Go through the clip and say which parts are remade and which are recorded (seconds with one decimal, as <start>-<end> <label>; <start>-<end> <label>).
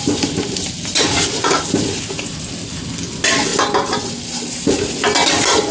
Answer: 0.0-5.7 recorded